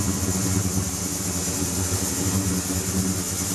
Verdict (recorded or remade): recorded